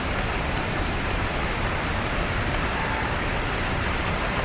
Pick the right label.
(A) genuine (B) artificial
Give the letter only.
A